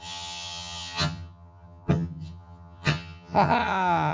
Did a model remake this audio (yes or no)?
yes